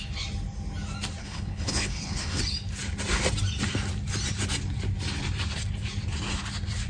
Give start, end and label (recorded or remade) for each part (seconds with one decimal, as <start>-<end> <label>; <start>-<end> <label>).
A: 0.0-1.2 recorded; 1.2-2.4 remade; 2.4-6.9 recorded

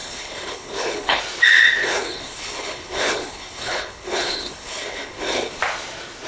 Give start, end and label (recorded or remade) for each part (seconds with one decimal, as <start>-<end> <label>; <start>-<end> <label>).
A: 0.0-1.2 remade; 1.2-1.8 recorded; 1.8-5.6 remade; 5.6-6.3 recorded

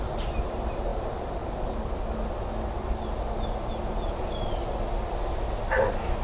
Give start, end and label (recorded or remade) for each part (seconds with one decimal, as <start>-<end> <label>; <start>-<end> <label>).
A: 0.0-6.2 recorded

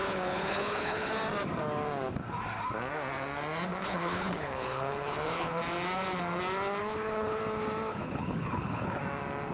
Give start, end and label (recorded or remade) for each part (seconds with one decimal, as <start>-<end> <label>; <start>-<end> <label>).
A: 0.0-1.1 remade; 1.1-3.8 recorded; 3.8-5.6 remade; 5.6-6.8 recorded; 6.8-7.4 remade; 7.4-7.9 recorded; 7.9-9.0 remade; 9.0-9.5 recorded

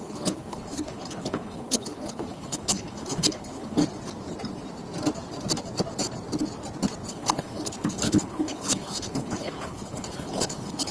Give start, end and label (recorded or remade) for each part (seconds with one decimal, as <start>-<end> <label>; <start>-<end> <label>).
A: 0.0-3.8 remade; 3.8-7.1 recorded; 7.1-10.9 remade

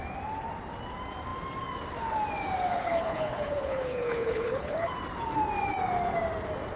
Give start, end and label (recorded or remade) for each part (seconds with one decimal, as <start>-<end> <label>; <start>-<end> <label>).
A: 0.0-2.7 recorded; 2.7-4.9 remade; 4.9-6.8 recorded

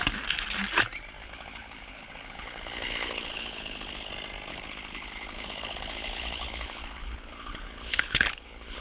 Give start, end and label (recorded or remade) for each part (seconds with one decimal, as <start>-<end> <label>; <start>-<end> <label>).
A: 0.0-1.2 recorded; 1.2-4.1 remade; 4.1-4.5 recorded; 4.5-8.8 remade

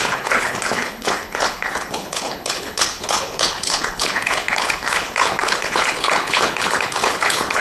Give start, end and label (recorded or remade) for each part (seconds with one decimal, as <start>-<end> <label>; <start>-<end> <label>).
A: 0.0-7.6 remade